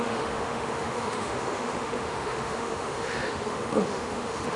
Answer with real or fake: fake